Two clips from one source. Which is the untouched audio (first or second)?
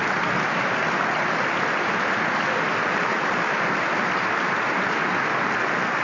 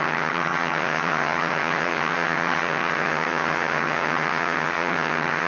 first